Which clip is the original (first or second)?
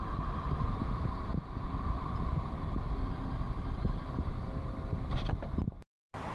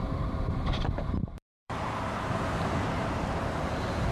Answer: first